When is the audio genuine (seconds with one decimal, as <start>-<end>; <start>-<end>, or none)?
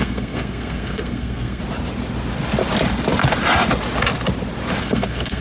1.6-4.8